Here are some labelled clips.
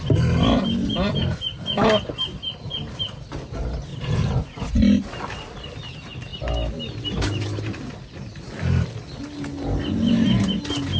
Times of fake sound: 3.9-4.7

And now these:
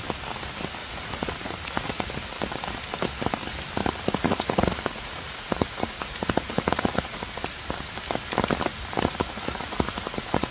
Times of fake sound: 0.8-2.1; 3.8-7.4; 8.7-10.5

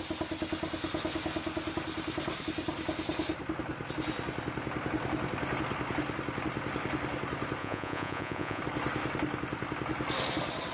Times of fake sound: 7.6-8.6

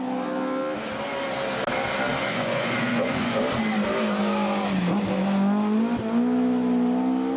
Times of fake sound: 2.2-3.4

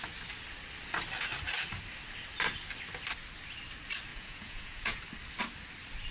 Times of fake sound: 4.1-5.0

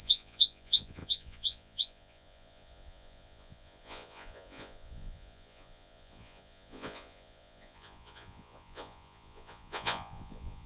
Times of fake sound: 0.0-10.7

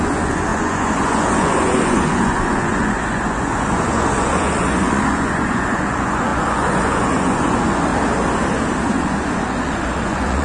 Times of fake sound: 0.0-7.9; 8.8-10.4

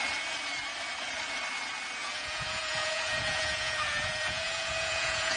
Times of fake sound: 2.0-5.4